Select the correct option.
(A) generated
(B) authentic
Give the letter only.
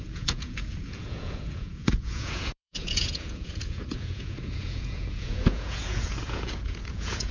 A